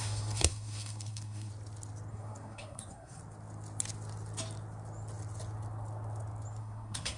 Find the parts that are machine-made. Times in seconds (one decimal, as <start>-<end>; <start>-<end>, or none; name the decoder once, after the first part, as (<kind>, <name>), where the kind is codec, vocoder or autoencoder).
0.0-1.5 (codec, SNAC); 2.1-3.2; 6.6-7.2